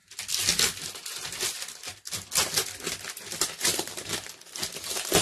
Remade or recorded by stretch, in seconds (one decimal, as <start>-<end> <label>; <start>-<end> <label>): 0.0-5.2 recorded